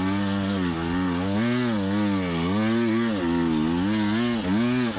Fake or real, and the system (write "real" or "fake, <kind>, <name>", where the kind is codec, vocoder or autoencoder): real